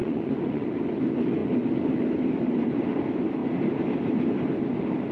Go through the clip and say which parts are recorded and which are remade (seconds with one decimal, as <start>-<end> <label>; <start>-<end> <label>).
0.0-0.7 remade; 0.7-5.1 recorded